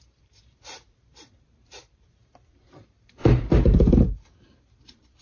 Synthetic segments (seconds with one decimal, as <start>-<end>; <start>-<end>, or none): 0.0-5.2

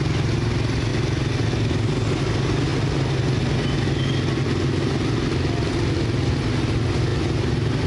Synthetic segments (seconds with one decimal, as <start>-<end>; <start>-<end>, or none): none

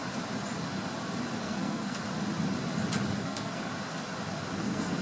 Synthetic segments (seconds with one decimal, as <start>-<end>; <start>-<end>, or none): 1.4-2.0; 3.2-3.7; 4.6-5.0

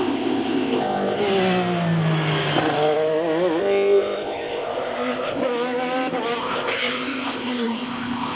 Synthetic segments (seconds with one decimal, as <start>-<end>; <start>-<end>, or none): 0.0-1.2; 3.6-5.4; 6.4-8.4

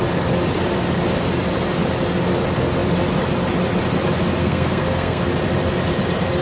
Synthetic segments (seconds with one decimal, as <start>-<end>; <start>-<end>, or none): 4.4-5.3

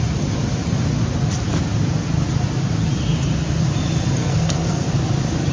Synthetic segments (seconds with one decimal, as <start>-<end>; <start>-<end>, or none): 4.2-4.9